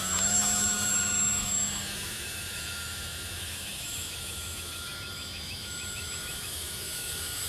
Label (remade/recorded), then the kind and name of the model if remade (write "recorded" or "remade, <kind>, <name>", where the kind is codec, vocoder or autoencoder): remade, autoencoder, DAC-VAE